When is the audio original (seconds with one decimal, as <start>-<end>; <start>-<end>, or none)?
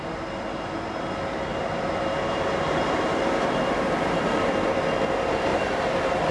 0.0-1.5; 4.8-5.5